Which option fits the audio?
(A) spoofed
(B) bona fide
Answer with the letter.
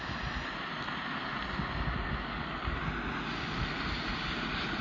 B